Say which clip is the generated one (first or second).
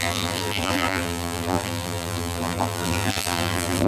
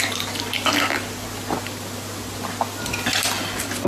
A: first